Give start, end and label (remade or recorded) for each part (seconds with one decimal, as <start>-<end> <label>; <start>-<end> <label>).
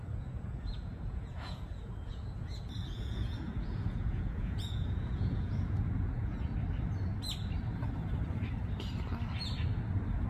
0.0-6.5 remade; 6.5-10.3 recorded